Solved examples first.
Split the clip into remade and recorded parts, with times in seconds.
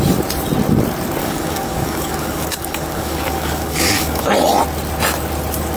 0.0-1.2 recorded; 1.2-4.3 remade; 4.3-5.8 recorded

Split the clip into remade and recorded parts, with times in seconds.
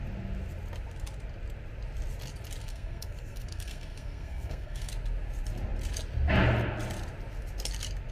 0.0-2.6 recorded; 2.6-4.9 remade; 4.9-8.1 recorded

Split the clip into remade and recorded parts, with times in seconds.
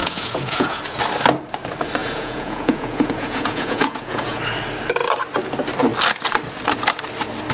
0.0-0.8 remade; 0.8-2.0 recorded; 2.0-4.4 remade; 4.4-7.5 recorded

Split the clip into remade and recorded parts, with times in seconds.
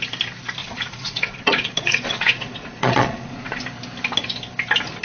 0.0-0.6 recorded; 0.6-3.6 remade; 3.6-5.0 recorded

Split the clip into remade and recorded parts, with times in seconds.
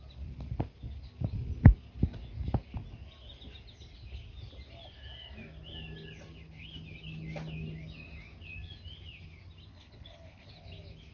0.0-9.7 recorded; 9.7-10.5 remade; 10.5-11.1 recorded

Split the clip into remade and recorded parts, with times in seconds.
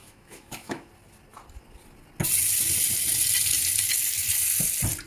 0.0-0.9 remade; 0.9-5.1 recorded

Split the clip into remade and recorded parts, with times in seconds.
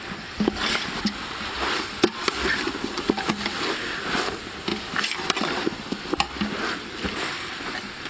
0.0-8.1 recorded